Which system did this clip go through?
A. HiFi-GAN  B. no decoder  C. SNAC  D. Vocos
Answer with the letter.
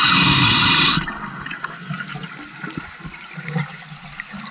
B